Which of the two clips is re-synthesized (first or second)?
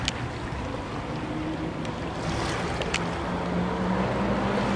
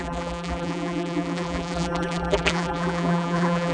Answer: second